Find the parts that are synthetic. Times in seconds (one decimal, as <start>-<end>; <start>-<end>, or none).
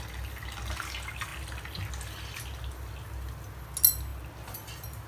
none